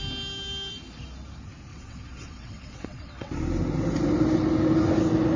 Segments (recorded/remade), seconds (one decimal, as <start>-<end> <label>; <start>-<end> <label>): 0.0-1.7 recorded; 1.7-3.3 remade; 3.3-5.4 recorded